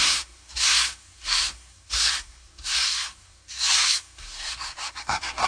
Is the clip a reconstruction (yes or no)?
yes